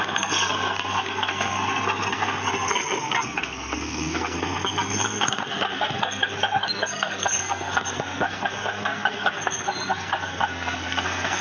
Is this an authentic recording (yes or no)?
no